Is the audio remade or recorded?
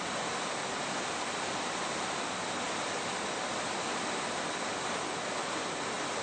recorded